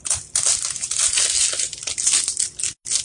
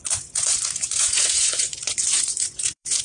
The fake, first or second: second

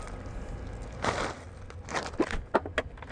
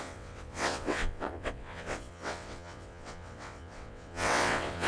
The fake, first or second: second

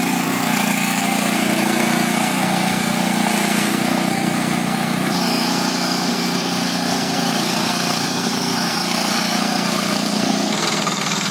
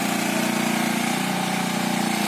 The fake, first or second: first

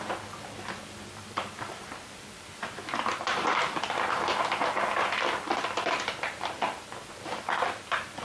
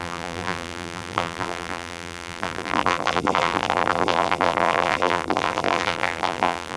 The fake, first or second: second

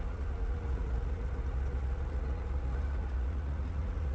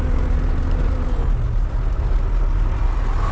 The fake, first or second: first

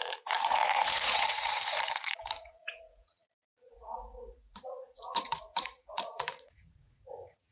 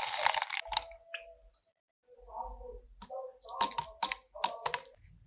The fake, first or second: first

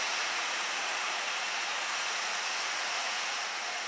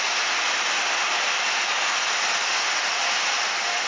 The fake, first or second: first